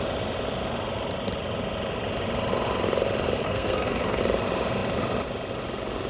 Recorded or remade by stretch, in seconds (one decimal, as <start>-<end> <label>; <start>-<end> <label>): 0.0-3.4 recorded; 3.4-4.2 remade; 4.2-6.1 recorded